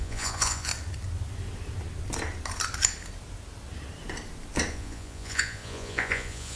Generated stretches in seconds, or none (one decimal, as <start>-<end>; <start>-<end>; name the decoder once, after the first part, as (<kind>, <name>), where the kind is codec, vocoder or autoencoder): 0.0-0.7 (vocoder, Vocos); 4.7-6.6